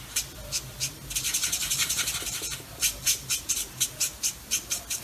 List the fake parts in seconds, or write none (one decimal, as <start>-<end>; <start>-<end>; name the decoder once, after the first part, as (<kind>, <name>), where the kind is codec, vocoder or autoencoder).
1.8-2.6 (vocoder, BigVGAN v2)